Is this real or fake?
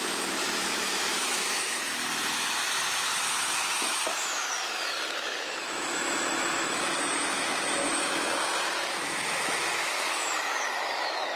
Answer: fake